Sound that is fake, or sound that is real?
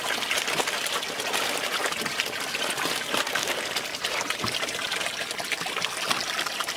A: real